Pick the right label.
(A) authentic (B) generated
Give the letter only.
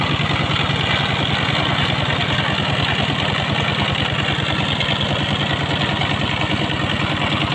A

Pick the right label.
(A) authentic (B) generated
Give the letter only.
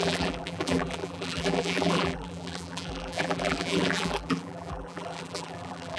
B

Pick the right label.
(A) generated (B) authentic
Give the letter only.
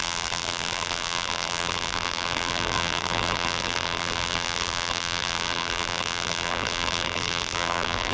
A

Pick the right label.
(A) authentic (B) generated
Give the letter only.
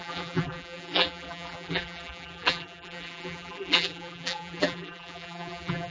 B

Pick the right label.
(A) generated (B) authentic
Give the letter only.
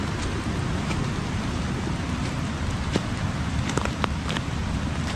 B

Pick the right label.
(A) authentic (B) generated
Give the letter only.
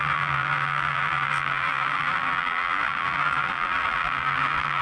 B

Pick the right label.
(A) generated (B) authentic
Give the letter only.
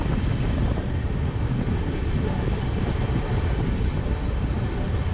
A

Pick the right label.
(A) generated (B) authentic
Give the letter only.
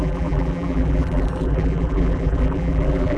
A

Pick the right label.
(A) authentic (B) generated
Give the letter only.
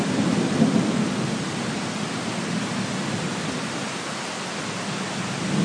A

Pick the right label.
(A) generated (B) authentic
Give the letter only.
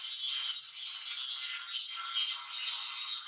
B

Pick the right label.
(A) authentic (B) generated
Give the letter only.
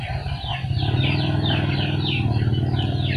A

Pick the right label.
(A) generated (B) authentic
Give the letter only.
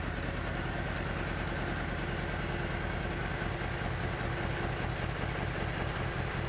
B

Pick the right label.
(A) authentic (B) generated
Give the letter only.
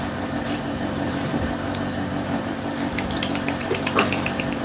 B